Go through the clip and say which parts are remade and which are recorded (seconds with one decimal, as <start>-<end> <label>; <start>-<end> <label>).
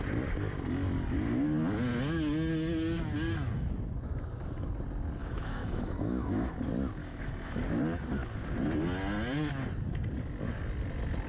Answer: 0.0-5.2 recorded; 5.2-6.5 remade; 6.5-7.0 recorded; 7.0-7.6 remade; 7.6-11.3 recorded